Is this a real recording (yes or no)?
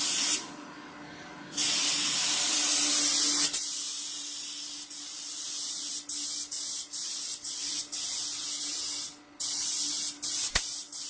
yes